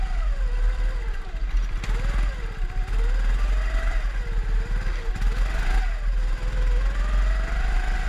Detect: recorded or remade recorded